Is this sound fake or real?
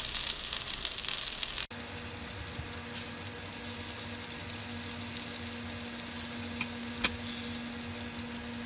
real